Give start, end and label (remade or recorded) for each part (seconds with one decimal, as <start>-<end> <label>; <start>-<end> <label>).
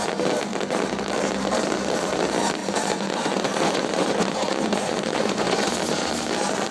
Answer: 0.0-2.6 recorded; 2.6-5.7 remade; 5.7-6.7 recorded